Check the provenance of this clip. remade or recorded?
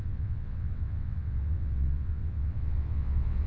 remade